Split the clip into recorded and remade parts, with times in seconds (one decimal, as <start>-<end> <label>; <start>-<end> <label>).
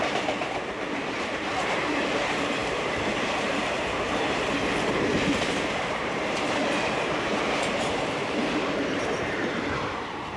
0.0-10.4 remade